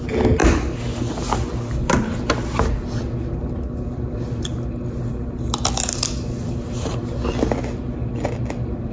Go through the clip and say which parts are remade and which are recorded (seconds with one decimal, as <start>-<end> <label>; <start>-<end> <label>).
0.0-8.9 recorded